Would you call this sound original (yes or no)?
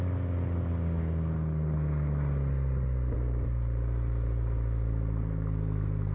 yes